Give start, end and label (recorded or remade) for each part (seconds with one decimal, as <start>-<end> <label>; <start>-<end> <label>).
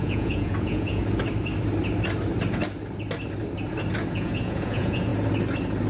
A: 0.0-1.0 remade; 1.0-4.1 recorded; 4.1-5.1 remade; 5.1-5.9 recorded